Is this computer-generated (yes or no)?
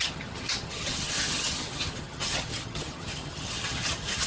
yes